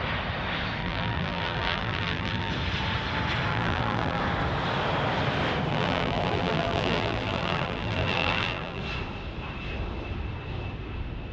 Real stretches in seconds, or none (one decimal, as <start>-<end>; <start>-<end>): 0.0-0.8; 2.5-3.5; 4.2-5.7; 8.8-11.3